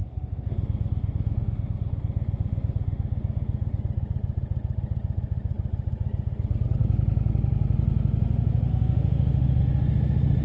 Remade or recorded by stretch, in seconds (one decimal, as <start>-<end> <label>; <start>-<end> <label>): 0.0-3.8 remade; 3.8-8.7 recorded; 8.7-9.6 remade; 9.6-10.4 recorded